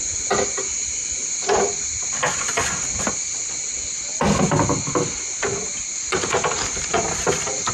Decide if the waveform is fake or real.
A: real